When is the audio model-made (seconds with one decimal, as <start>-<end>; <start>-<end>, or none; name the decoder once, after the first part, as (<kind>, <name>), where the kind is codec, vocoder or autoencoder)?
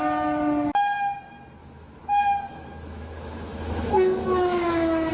1.6-5.1 (autoencoder, DAC-VAE)